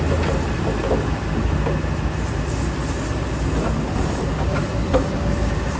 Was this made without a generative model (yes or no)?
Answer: yes